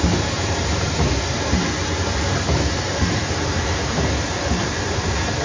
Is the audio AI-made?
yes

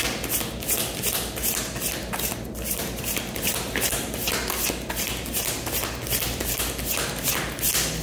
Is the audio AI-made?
no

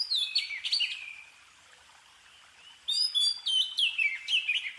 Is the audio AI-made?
no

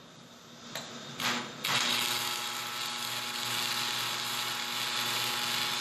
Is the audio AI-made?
no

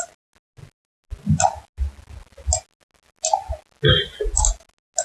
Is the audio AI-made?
no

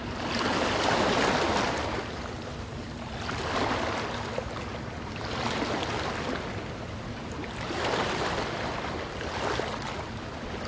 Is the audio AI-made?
no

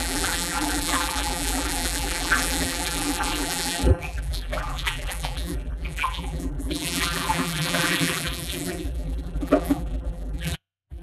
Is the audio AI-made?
yes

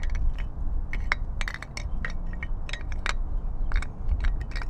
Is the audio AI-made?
no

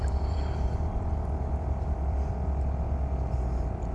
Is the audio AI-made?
yes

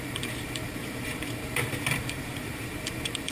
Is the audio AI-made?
yes